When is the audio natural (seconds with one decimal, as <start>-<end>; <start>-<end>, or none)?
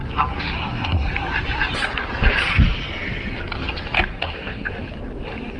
0.0-0.6; 1.1-4.1; 4.7-5.6